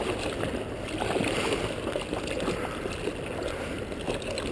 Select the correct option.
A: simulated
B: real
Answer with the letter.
B